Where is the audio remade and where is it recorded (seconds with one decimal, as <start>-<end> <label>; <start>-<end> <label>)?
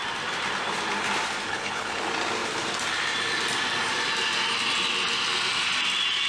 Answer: 0.0-1.5 recorded; 1.5-2.0 remade; 2.0-6.3 recorded